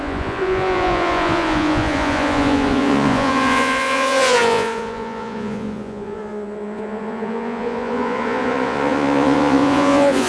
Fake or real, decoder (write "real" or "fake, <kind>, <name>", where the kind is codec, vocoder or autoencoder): fake, vocoder, Vocos